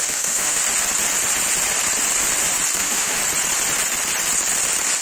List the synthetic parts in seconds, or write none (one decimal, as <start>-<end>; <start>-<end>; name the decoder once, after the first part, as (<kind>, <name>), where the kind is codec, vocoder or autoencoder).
0.0-0.6 (autoencoder, DAC-VAE); 2.8-3.2